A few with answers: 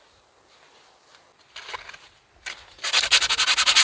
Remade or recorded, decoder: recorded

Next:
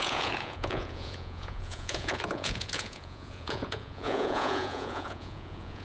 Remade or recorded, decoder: remade, vocoder, Vocos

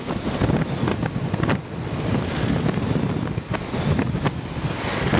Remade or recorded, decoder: recorded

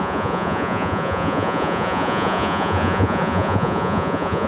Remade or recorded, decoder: remade, vocoder, Vocos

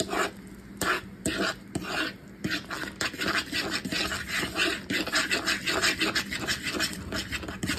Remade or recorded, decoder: recorded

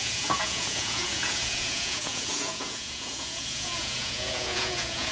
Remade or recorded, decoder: remade, vocoder, Vocos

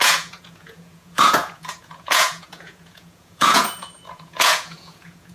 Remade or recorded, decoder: remade, vocoder, Vocos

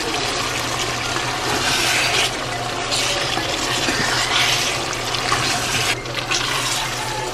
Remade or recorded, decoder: recorded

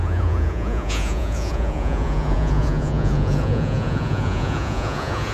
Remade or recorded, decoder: remade, vocoder, Vocos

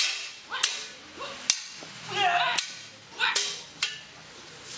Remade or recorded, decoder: recorded